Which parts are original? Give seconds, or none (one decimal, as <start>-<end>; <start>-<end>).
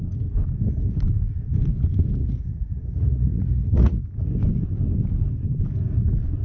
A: 0.0-2.2; 4.0-6.4